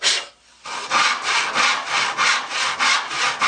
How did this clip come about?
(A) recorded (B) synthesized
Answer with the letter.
A